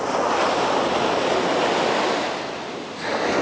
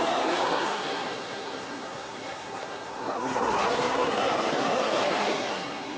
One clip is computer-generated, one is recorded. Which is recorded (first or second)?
first